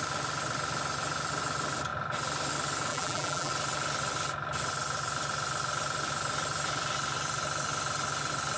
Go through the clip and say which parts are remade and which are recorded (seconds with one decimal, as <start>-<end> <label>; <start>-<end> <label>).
0.0-2.9 recorded; 2.9-3.5 remade; 3.5-8.6 recorded